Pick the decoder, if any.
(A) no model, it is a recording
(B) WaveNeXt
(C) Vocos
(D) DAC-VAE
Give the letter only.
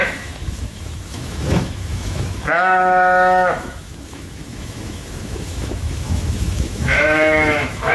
D